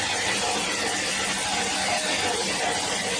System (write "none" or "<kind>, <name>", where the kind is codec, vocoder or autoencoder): none